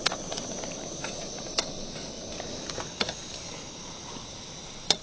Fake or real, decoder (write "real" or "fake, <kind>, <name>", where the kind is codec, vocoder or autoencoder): real